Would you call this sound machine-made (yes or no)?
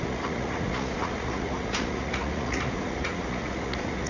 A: yes